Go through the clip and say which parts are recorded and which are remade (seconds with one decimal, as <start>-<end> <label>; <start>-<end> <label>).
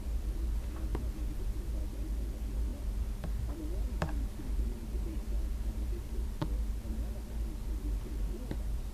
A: 0.0-8.9 remade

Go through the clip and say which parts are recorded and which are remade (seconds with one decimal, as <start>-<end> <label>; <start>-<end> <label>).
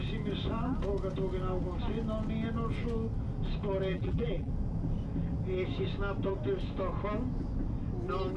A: 0.0-3.9 recorded; 3.9-4.5 remade; 4.5-8.4 recorded